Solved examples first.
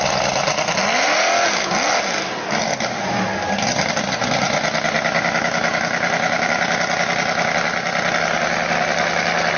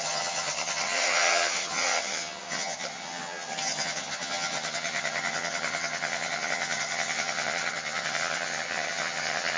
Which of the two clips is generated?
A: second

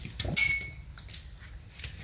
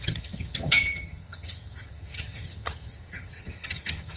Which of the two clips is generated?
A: second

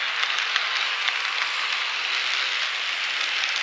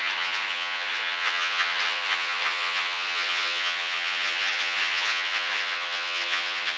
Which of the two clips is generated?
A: second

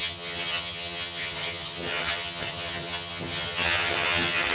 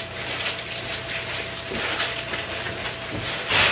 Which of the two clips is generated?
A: first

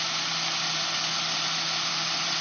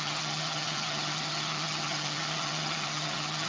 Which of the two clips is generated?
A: second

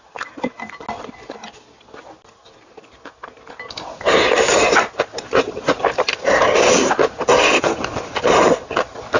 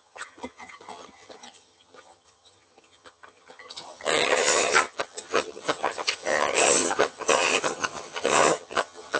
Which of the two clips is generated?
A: second